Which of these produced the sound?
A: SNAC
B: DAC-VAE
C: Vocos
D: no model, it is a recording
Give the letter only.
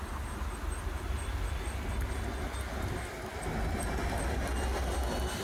D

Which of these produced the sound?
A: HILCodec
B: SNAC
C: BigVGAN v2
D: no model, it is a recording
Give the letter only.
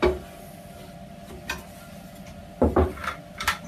D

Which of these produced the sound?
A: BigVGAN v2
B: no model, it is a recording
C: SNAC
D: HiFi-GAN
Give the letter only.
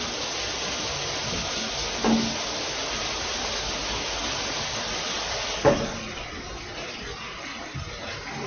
B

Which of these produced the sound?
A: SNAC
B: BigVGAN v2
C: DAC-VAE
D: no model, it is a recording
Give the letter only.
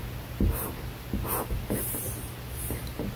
D